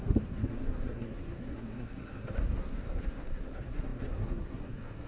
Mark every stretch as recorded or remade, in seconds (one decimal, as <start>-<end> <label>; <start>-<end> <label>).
0.0-5.1 remade